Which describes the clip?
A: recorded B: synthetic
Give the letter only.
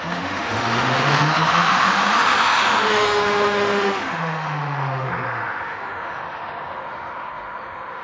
B